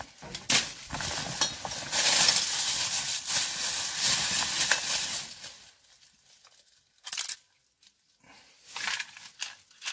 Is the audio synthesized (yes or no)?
no